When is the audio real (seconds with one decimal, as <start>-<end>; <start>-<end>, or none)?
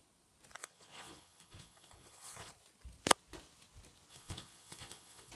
0.0-0.6; 2.5-4.1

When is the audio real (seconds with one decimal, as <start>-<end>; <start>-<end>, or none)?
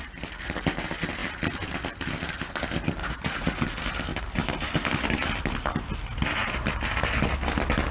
0.0-3.0; 3.6-7.9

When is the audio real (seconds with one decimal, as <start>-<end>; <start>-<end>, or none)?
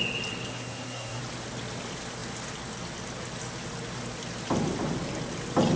0.0-0.5; 1.2-5.8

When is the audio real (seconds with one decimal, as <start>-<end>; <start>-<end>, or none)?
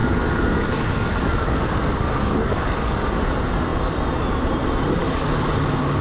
3.0-5.0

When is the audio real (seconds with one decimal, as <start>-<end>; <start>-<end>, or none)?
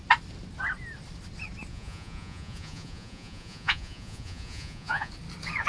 0.0-1.7; 5.1-5.7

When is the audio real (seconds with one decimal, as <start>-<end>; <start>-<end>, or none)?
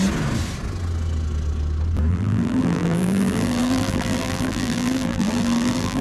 0.0-2.1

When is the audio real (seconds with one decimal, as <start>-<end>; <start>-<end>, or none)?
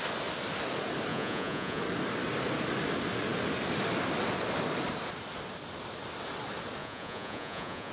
0.0-1.1; 1.8-6.8